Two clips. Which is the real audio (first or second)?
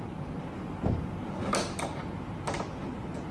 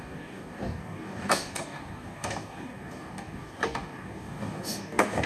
first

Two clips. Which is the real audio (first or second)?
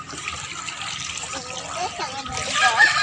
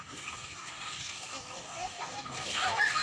first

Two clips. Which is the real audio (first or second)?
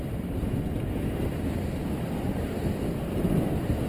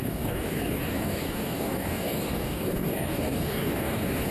first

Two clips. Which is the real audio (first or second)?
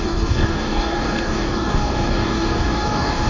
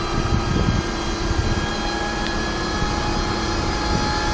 second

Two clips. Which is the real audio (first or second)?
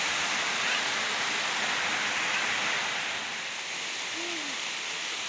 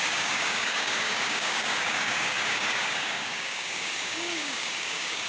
first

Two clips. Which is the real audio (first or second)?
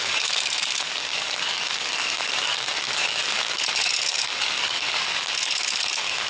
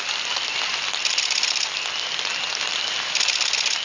second